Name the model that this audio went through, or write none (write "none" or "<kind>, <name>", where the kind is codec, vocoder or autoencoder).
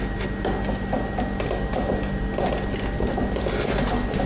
none